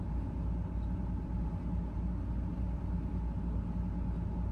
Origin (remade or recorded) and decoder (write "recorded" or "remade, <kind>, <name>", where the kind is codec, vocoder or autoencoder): recorded